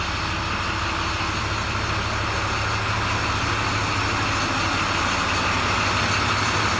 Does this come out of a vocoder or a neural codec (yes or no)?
no